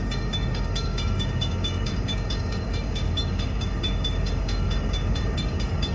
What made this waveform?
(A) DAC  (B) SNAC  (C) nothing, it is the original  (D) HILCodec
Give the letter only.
A